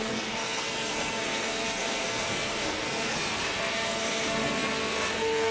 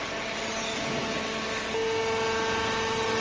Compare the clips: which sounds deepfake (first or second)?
first